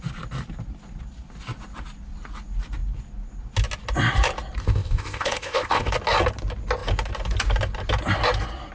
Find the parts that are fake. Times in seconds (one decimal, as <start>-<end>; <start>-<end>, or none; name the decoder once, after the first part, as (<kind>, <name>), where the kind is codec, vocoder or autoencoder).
4.6-5.9 (codec, ZipCodec)